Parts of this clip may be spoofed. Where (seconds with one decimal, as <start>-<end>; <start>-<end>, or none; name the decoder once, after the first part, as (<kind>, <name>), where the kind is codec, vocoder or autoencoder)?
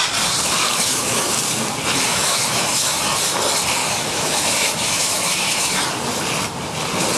0.6-1.3 (autoencoder, DAC-VAE); 2.1-3.0; 3.8-5.8